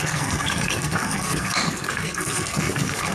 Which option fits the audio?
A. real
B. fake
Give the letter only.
B